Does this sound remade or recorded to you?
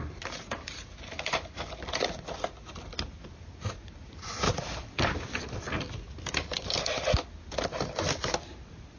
recorded